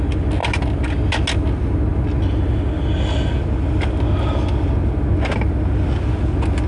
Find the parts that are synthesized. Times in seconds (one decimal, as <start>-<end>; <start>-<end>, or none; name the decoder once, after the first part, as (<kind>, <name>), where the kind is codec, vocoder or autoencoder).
none